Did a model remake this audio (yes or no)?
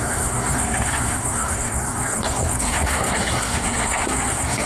yes